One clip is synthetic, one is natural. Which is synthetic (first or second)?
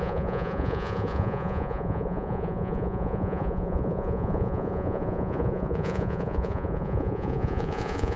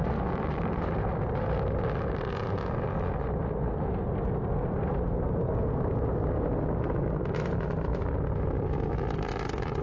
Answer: first